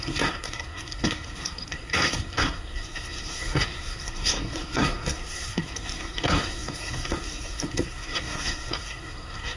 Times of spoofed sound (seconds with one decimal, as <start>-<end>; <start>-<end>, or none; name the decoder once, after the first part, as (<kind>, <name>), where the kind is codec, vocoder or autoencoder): 0.0-9.6 (codec, SNAC)